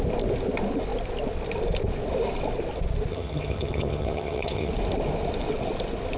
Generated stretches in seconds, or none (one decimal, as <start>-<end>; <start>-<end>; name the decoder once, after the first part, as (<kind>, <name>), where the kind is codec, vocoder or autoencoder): 3.1-4.7 (vocoder, HiFi-GAN)